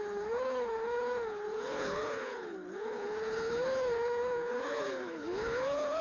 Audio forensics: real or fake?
fake